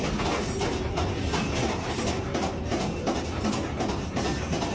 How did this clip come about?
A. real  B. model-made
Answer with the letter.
A